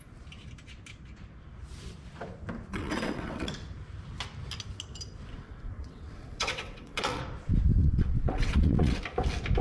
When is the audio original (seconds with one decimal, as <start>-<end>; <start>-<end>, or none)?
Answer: 0.0-2.7; 3.5-5.3; 7.2-7.8; 9.0-9.6